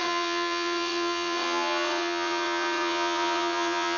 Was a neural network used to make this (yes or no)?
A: yes